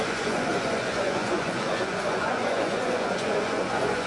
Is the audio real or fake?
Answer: fake